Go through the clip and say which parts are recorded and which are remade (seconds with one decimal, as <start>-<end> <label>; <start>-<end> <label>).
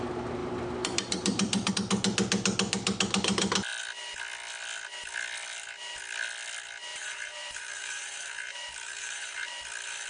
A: 0.0-0.4 recorded; 0.4-1.7 remade; 1.7-6.9 recorded; 6.9-9.5 remade; 9.5-10.1 recorded